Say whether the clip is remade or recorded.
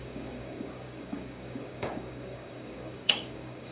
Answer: remade